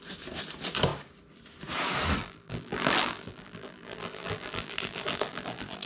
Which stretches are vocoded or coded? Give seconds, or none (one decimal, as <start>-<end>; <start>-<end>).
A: 2.2-5.9